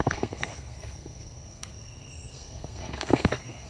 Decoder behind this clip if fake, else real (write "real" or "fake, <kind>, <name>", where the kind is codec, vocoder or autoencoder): fake, codec, SNAC